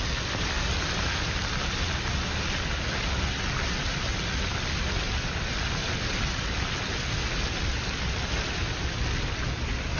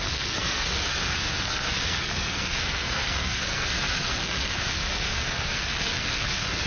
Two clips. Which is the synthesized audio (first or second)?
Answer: second